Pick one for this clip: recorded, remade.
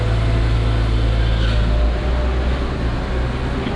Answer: recorded